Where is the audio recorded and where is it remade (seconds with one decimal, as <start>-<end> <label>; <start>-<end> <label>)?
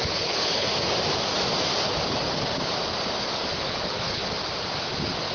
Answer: 0.0-0.7 remade; 0.7-3.6 recorded; 3.6-4.2 remade; 4.2-5.3 recorded